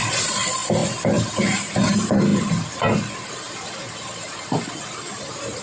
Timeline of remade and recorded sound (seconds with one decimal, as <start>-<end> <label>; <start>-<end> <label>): 0.0-5.6 recorded